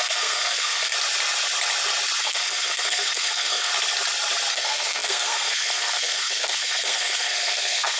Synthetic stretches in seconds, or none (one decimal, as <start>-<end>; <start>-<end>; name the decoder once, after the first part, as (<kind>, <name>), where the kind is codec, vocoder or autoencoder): 0.0-0.9 (codec, SNAC); 2.2-3.7; 4.5-8.0